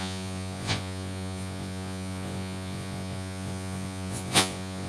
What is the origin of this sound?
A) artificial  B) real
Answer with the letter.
A